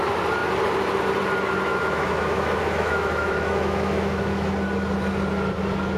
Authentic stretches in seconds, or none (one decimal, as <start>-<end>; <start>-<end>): 0.0-1.7; 4.5-6.0